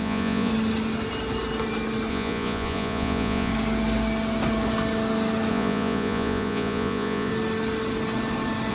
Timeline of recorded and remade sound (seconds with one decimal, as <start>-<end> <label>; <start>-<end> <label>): 0.0-0.5 remade; 0.5-2.1 recorded; 2.1-3.5 remade; 3.5-5.5 recorded; 5.5-7.3 remade; 7.3-8.7 recorded